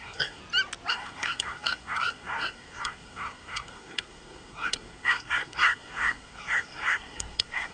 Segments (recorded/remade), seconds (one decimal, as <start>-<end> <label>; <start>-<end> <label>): 0.0-0.4 remade; 0.4-0.9 recorded; 0.9-7.7 remade